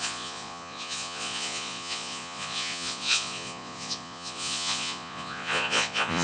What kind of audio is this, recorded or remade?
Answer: remade